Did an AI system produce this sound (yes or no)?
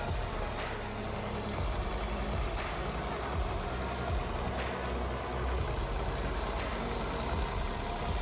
no